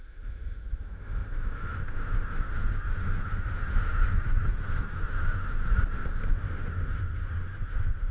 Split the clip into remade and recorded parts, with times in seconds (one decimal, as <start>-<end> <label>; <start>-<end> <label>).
0.0-5.6 remade; 5.6-6.3 recorded; 6.3-8.1 remade